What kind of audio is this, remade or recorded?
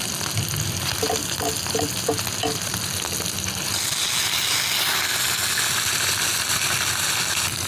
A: recorded